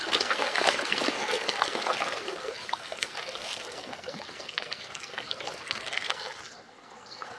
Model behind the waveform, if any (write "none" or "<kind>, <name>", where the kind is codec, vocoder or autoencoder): codec, SNAC